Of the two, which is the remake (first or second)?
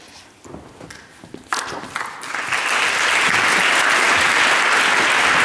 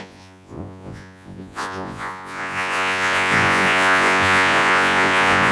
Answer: second